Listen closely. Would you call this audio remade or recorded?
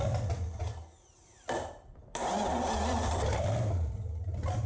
recorded